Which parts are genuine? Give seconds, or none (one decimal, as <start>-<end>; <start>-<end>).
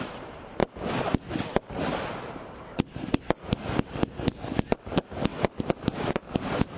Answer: 0.6-1.3; 5.3-6.1